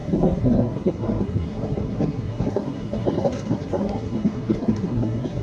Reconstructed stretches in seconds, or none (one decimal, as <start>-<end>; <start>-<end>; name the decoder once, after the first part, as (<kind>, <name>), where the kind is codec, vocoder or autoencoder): 0.0-5.4 (codec, SNAC)